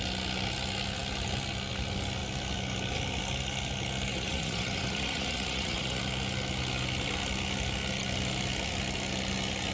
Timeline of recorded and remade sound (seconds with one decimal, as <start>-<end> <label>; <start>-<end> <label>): 0.0-4.1 recorded; 4.1-6.0 remade; 6.0-9.7 recorded